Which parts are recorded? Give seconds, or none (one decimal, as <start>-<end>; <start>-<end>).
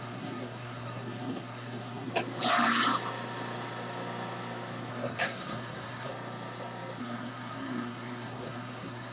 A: 2.1-4.9; 6.1-7.0